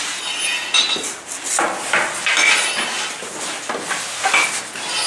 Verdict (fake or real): real